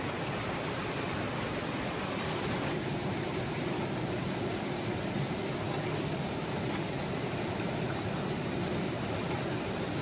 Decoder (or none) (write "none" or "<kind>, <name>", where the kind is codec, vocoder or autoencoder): vocoder, BigVGAN v2